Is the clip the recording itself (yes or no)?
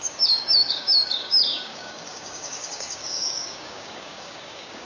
no